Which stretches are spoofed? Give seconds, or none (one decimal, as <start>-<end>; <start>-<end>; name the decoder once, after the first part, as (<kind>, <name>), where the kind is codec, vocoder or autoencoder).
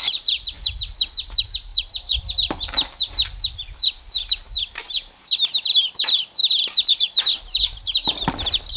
0.0-0.9 (vocoder, BigVGAN v2); 1.7-2.2